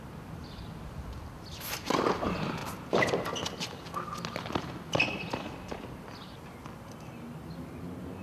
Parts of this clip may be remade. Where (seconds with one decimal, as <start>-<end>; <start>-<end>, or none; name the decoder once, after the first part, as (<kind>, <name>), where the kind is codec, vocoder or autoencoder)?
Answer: none